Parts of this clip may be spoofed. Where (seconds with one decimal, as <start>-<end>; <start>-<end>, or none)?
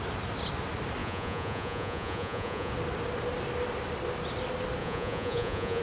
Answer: 1.0-2.7; 4.8-5.8